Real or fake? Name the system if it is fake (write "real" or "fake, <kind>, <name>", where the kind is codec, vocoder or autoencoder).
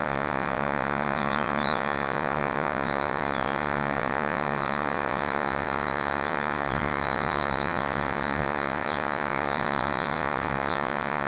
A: fake, vocoder, WaveNeXt